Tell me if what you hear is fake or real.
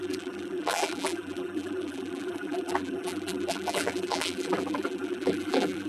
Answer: fake